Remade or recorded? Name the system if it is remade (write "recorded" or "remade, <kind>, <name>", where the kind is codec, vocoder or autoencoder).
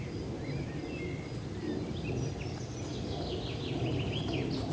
recorded